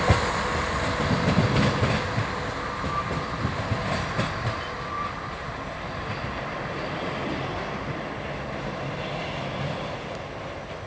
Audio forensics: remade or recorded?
recorded